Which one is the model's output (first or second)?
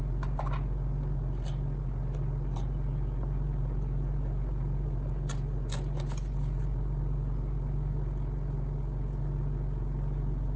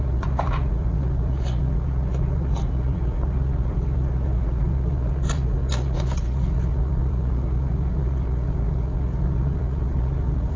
second